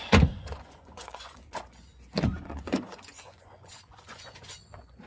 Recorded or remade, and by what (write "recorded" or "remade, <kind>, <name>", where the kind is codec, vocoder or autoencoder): remade, vocoder, Vocos